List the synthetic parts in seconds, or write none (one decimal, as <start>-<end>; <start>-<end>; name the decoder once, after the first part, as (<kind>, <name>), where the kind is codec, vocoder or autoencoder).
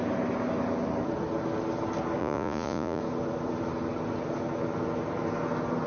2.2-3.0 (vocoder, Vocos)